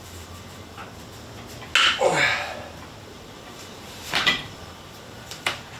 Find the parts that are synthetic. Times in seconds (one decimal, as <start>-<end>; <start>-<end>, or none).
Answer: 0.0-0.8; 3.0-5.8